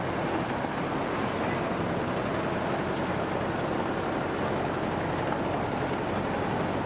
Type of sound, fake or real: real